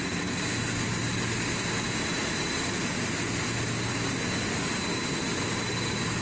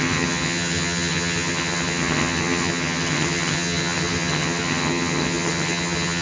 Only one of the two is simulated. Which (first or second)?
second